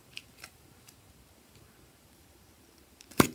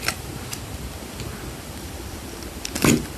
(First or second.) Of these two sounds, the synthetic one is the first